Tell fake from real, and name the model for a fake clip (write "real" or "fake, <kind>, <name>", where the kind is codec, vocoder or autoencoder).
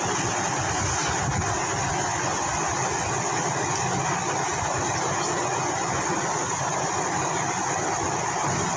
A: real